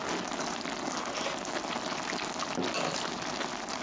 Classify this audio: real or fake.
real